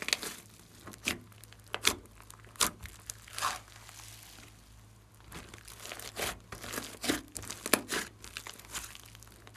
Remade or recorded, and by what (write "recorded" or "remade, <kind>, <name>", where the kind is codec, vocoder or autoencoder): recorded